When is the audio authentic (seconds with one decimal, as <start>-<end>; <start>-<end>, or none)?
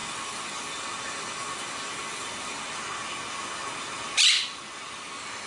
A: 1.4-4.1